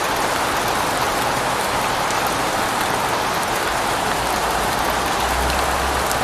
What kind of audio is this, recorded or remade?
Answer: recorded